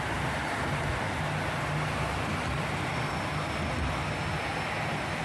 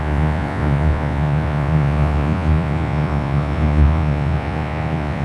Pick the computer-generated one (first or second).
second